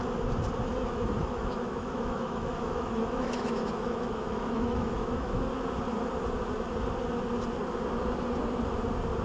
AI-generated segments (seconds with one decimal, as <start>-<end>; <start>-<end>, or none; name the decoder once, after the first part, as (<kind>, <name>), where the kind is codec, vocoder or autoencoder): 0.7-5.4 (autoencoder, DAC-VAE)